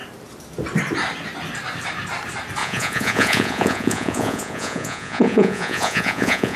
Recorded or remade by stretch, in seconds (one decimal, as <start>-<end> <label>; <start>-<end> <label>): 0.0-2.6 recorded; 2.6-6.6 remade